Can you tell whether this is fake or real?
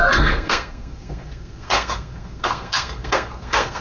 fake